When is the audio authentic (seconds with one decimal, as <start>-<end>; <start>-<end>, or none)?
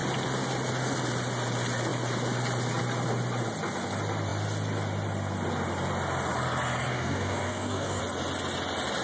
0.0-6.9; 8.0-9.0